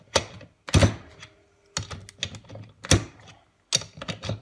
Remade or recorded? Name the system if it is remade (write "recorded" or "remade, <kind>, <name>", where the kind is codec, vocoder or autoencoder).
recorded